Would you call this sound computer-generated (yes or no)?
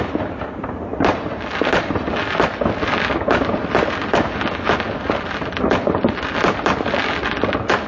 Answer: no